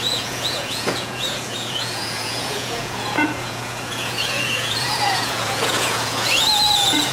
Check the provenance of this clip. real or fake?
fake